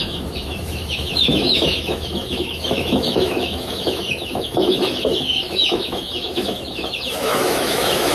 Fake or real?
fake